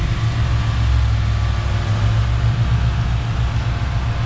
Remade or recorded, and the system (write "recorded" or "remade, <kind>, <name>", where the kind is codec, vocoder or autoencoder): recorded